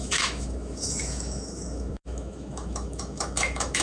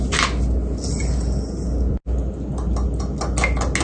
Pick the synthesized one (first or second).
first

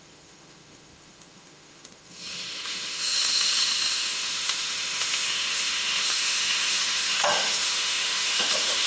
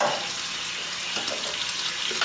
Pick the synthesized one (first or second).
first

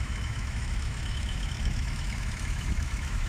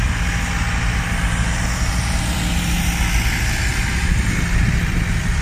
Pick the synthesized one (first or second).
first